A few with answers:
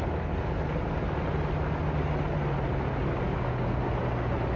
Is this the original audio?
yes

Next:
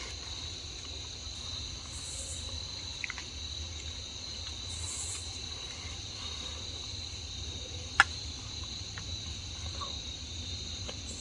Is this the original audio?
no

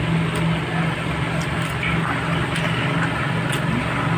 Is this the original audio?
yes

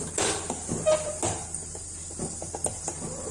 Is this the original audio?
yes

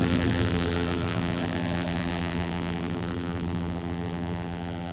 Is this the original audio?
no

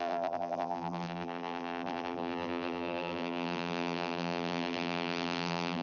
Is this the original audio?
no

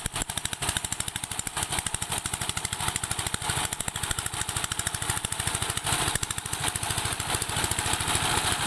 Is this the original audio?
yes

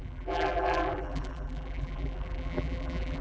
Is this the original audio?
no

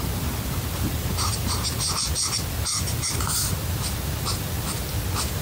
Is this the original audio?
yes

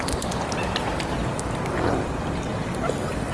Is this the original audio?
no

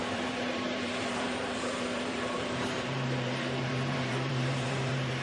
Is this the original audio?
no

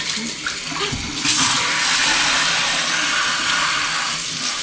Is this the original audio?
yes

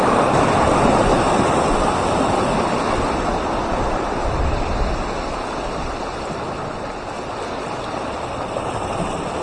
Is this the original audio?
yes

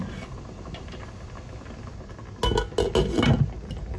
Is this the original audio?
yes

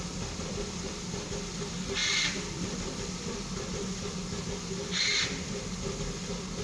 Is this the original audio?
yes